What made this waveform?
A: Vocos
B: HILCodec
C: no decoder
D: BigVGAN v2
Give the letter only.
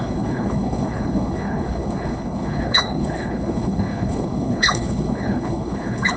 B